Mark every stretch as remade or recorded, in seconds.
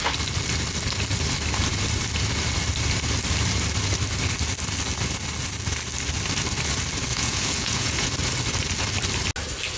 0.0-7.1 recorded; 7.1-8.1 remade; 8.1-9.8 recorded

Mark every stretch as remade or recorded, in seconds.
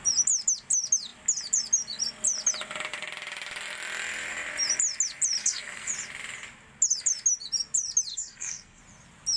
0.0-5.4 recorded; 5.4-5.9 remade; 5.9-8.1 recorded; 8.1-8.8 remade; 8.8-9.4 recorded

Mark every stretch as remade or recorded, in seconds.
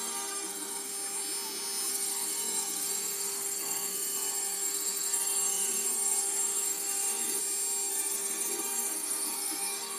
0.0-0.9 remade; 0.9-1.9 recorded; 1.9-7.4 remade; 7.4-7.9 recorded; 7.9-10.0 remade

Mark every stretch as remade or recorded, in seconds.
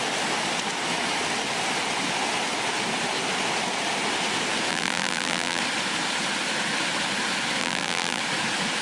0.0-4.7 recorded; 4.7-5.6 remade; 5.6-7.6 recorded; 7.6-8.2 remade; 8.2-8.8 recorded